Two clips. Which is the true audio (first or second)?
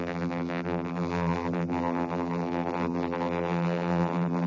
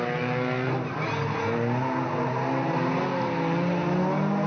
second